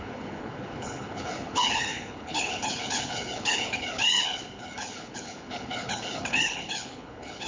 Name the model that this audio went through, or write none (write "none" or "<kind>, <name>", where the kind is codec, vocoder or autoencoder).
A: codec, HILCodec